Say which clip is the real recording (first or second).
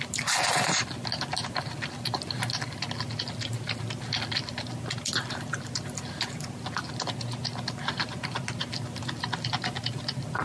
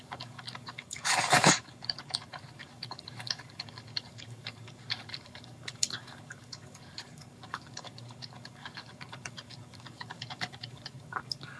first